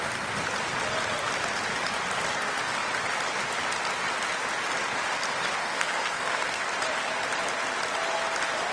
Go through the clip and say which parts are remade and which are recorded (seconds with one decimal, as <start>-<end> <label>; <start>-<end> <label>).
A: 0.0-5.6 recorded; 5.6-6.6 remade; 6.6-8.7 recorded